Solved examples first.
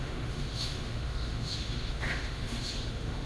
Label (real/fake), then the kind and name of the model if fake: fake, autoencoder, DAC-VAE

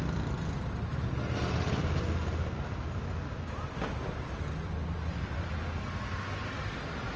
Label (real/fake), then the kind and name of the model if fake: real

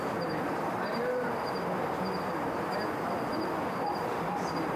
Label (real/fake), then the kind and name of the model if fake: real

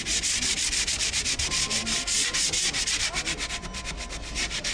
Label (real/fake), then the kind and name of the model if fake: real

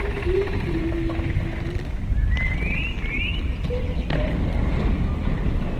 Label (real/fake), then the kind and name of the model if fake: real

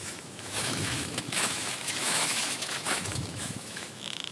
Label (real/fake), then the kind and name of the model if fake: fake, autoencoder, DAC-VAE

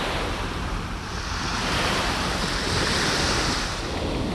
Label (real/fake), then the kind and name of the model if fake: real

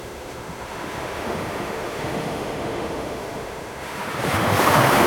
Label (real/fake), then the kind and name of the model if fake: fake, autoencoder, DAC-VAE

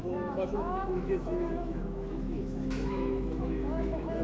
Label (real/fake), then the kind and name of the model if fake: fake, autoencoder, DAC-VAE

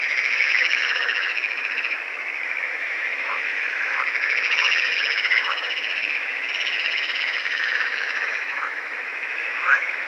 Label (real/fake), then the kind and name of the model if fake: fake, autoencoder, DAC-VAE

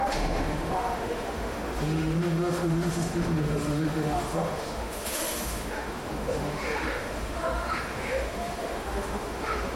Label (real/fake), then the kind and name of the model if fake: fake, autoencoder, DAC-VAE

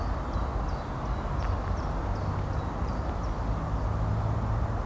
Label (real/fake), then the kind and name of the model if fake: real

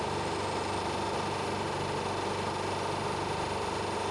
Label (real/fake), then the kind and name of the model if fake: real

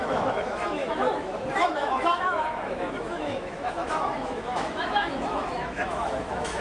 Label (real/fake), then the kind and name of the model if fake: fake, autoencoder, DAC-VAE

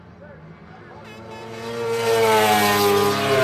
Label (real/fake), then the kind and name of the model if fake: real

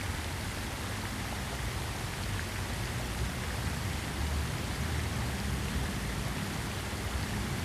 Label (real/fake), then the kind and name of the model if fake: real